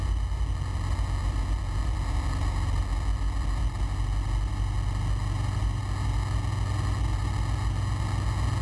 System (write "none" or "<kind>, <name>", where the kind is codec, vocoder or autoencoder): none